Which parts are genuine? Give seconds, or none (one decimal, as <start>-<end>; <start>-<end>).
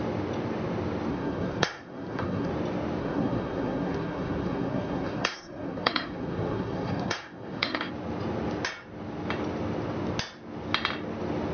0.0-1.1; 2.5-3.0; 7.9-11.5